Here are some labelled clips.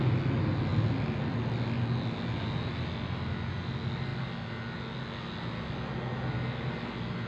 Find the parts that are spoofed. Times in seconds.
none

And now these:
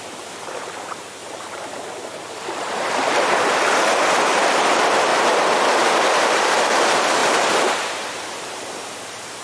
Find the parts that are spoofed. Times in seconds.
0.0-5.1; 6.3-9.4

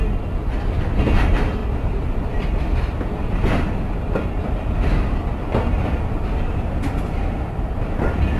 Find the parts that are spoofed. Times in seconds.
none